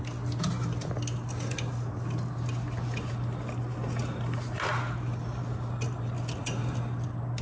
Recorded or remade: recorded